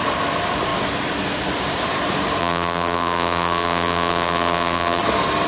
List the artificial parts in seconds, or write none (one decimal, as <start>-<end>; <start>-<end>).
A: 2.4-5.0